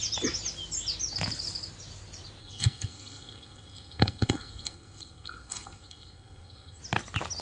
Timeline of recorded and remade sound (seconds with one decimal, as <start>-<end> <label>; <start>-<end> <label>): 0.0-2.4 recorded; 2.4-6.8 remade; 6.8-7.4 recorded